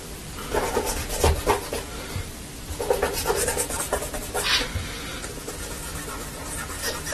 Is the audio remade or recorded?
remade